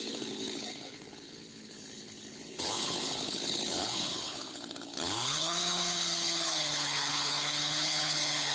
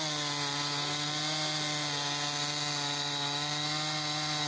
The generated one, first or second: first